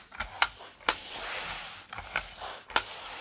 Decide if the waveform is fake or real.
real